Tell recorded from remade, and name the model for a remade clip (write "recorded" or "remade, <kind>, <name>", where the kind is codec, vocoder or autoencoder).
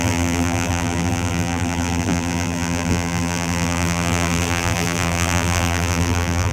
remade, vocoder, BigVGAN v2